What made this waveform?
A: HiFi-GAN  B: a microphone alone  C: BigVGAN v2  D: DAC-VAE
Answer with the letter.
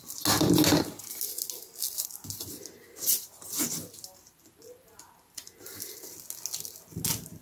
B